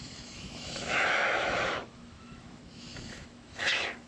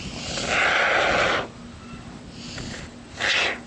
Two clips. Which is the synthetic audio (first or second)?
first